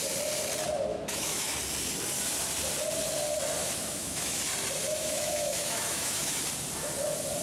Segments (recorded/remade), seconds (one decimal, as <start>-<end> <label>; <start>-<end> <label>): 0.0-0.9 recorded; 0.9-1.6 remade; 1.6-3.6 recorded; 3.6-4.4 remade; 4.4-4.9 recorded; 4.9-6.4 remade; 6.4-7.4 recorded